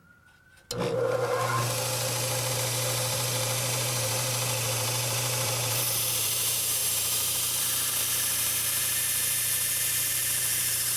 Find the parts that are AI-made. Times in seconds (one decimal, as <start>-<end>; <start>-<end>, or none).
2.5-11.0